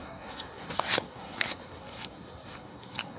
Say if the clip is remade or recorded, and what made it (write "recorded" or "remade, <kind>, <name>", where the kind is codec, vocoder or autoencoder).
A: remade, codec, SNAC